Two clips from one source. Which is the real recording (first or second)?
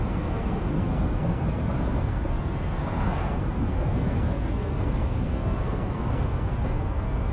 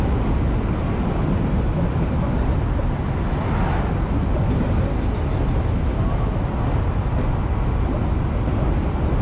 second